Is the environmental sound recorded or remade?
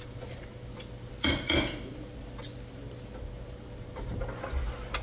recorded